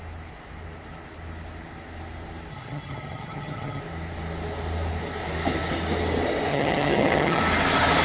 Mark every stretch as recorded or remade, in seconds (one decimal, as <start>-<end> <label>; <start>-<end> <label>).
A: 0.0-2.5 recorded; 2.5-3.8 remade; 3.8-6.5 recorded; 6.5-7.4 remade; 7.4-8.0 recorded